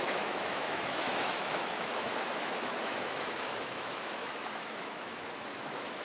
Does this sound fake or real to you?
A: fake